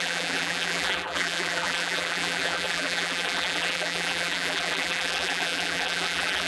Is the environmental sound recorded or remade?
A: remade